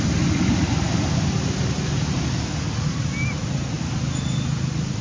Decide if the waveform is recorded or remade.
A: recorded